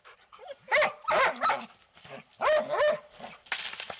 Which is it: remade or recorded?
recorded